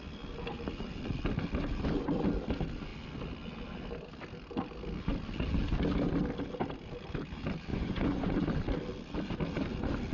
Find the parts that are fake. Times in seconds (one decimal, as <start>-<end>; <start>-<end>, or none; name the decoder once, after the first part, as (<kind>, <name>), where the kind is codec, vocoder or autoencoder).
7.7-8.4 (vocoder, Vocos)